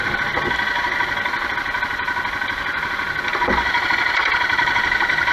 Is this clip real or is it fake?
real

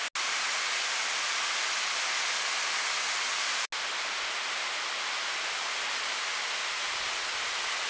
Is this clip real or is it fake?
real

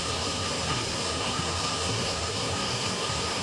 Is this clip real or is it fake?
fake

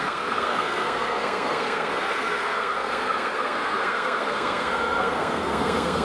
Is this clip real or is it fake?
fake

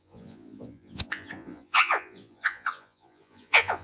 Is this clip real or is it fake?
fake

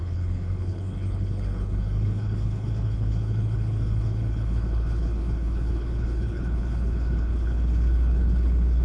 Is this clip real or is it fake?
fake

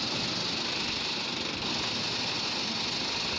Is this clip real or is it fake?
real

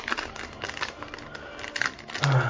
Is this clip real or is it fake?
real